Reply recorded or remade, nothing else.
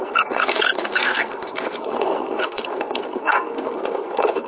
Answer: remade